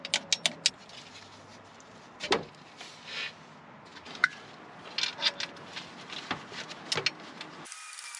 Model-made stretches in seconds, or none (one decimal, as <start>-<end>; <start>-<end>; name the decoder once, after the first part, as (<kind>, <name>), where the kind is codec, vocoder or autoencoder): 1.5-2.5 (vocoder, BigVGAN v2)